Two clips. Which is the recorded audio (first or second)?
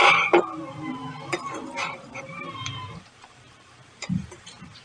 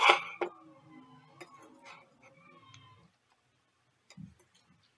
second